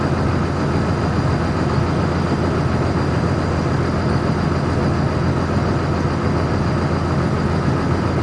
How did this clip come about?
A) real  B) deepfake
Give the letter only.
A